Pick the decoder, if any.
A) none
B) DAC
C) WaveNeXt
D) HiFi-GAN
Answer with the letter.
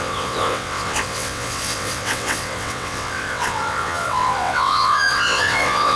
C